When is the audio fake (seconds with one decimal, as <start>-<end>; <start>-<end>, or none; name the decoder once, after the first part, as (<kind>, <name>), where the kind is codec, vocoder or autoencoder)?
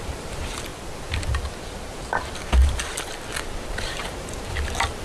0.0-0.7 (vocoder, BigVGAN v2); 3.7-5.0